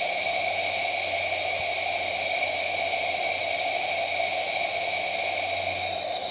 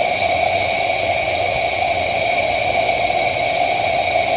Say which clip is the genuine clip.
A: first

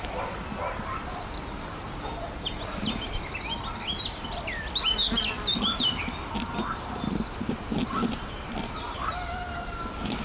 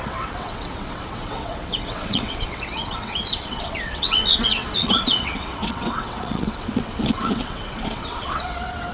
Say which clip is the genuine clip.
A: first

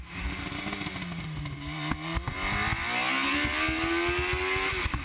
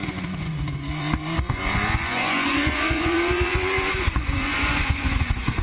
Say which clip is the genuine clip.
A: first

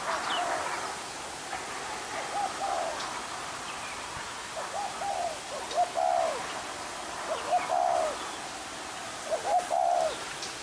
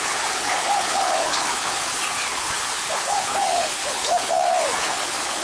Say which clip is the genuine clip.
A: first